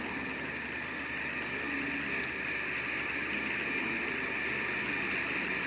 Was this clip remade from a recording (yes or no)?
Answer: no